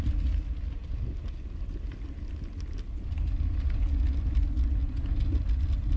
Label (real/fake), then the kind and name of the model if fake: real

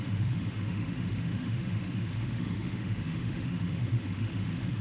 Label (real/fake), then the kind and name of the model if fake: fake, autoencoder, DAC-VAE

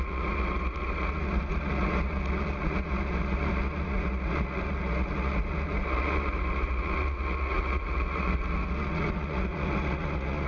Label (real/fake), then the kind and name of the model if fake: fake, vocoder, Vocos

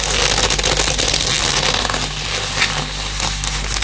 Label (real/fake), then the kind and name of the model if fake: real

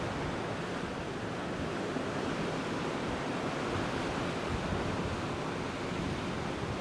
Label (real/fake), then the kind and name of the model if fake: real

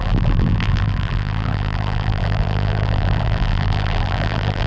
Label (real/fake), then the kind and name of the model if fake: fake, vocoder, BigVGAN v2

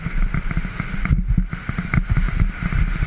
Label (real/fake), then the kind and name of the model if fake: real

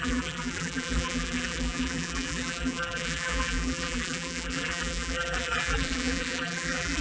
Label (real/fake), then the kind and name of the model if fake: fake, vocoder, BigVGAN v2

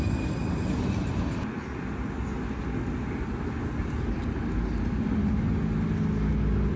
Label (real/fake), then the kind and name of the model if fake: real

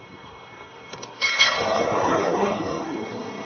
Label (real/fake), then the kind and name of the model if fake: fake, codec, SNAC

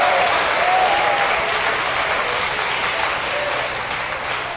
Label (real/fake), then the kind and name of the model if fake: real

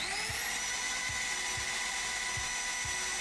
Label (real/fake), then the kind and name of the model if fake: real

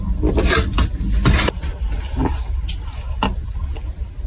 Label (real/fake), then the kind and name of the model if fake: real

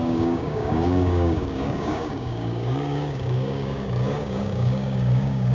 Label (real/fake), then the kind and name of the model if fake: fake, codec, DAC